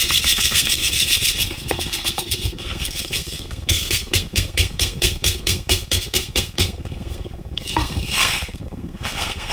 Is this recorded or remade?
remade